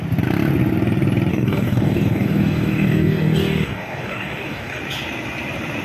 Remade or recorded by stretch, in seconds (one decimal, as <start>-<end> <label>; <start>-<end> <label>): 0.0-1.3 recorded; 1.3-4.8 remade; 4.8-5.8 recorded